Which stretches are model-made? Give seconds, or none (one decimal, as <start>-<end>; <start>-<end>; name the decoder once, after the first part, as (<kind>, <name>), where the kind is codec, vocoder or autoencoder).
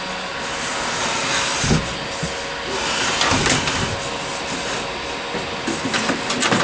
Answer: none